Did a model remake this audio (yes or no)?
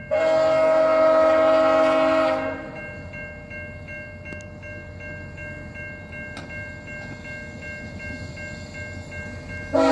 no